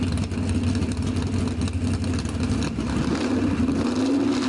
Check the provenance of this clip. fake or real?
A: real